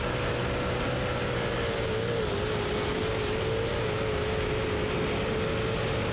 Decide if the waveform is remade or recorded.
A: recorded